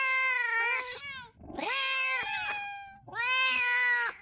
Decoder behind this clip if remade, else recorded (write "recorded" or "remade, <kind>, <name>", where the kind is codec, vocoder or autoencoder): recorded